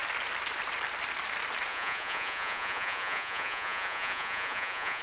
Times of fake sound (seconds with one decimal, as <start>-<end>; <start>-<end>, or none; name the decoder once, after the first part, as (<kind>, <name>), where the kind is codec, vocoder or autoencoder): 1.7-5.0 (vocoder, Vocos)